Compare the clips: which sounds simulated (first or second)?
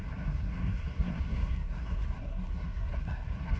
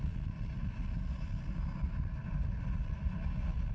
first